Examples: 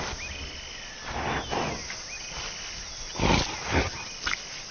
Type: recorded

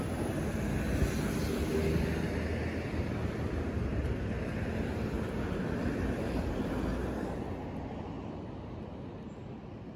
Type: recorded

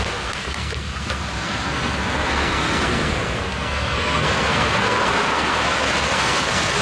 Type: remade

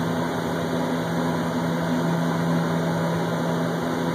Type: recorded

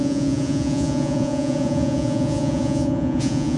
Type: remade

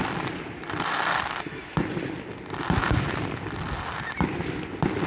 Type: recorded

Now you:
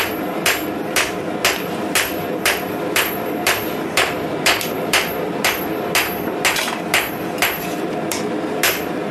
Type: recorded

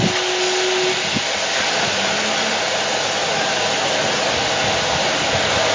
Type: recorded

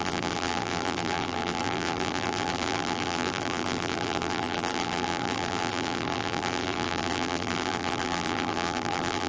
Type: remade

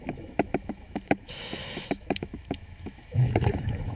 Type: remade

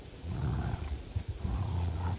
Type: remade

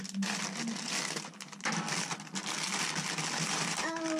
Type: recorded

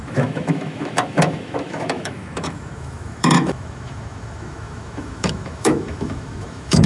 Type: remade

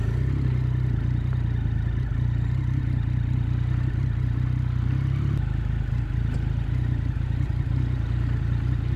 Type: recorded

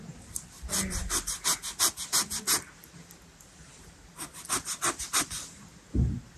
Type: recorded